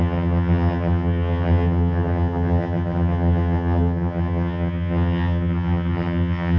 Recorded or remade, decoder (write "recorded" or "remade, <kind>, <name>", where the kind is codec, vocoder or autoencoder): remade, vocoder, HiFi-GAN